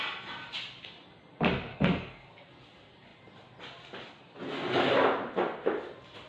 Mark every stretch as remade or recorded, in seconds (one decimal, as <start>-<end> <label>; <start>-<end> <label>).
0.0-1.7 recorded; 1.7-2.5 remade; 2.5-6.3 recorded